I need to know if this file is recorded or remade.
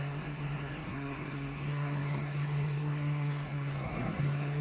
remade